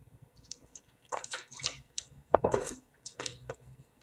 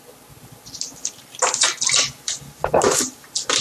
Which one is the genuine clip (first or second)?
second